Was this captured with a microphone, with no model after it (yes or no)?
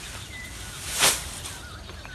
yes